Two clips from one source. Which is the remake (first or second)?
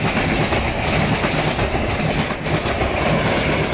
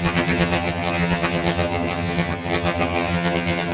second